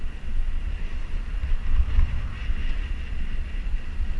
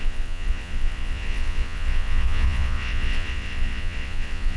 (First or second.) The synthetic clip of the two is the second